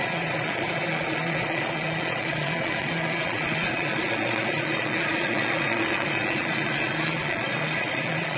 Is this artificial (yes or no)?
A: yes